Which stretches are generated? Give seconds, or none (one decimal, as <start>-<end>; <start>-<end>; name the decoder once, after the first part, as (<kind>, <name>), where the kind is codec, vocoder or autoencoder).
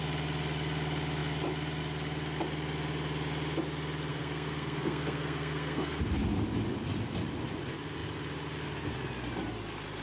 4.1-6.0 (codec, SNAC)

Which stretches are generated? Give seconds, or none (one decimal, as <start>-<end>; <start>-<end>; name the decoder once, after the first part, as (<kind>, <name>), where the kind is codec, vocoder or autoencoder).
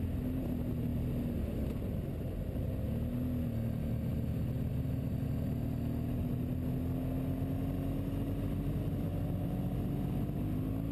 none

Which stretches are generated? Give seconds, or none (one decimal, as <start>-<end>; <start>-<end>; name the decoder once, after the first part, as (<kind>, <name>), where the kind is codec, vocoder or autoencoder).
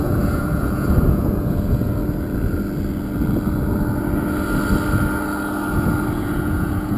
0.0-2.0 (vocoder, Vocos); 6.2-7.0